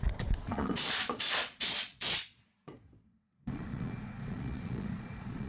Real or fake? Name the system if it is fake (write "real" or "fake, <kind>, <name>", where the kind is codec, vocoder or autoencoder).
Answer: fake, vocoder, Vocos